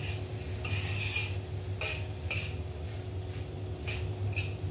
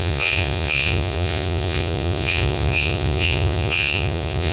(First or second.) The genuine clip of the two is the first